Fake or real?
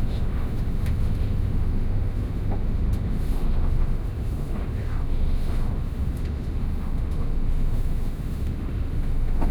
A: fake